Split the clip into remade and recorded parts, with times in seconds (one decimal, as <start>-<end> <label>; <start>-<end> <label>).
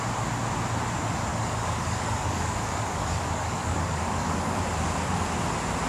0.0-1.3 recorded; 1.3-4.6 remade; 4.6-5.9 recorded